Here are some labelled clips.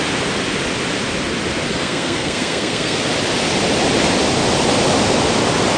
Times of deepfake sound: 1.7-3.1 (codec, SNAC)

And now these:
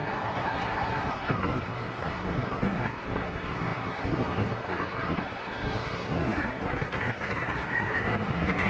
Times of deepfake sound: 0.0-8.7 (codec, SNAC)

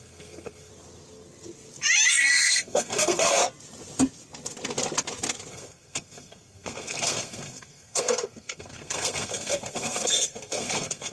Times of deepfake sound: 0.0-0.7 (codec, SNAC); 2.1-3.4; 5.5-11.1